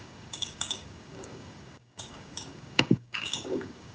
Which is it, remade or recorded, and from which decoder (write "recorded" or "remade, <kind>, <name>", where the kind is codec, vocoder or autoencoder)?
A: remade, codec, DAC